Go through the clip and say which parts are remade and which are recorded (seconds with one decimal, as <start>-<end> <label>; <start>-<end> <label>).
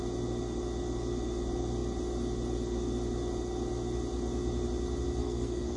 0.0-5.2 recorded; 5.2-5.8 remade